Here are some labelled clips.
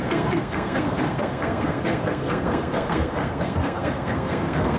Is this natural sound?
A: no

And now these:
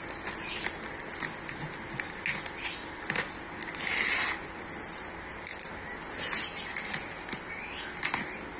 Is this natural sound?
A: yes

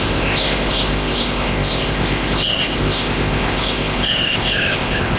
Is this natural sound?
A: no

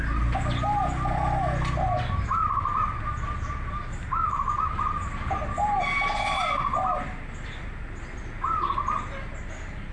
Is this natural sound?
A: yes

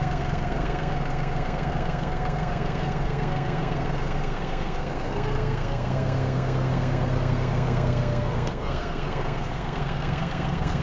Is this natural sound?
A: no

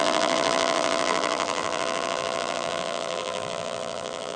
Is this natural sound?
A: no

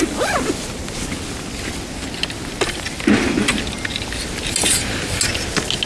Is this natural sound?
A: yes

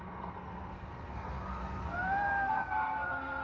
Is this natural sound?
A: no